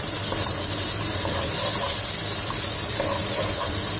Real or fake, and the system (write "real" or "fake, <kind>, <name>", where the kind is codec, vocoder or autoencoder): real